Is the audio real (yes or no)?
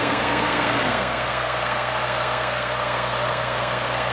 no